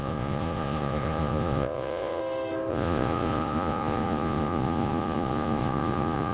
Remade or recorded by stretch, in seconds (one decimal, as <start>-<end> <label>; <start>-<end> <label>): 0.0-2.2 remade; 2.2-2.7 recorded; 2.7-6.3 remade